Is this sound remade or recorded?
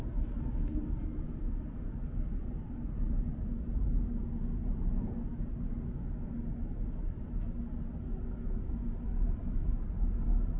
recorded